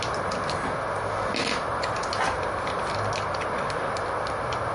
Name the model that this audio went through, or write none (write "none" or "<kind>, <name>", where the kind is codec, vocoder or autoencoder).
none